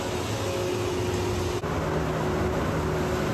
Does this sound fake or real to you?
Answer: real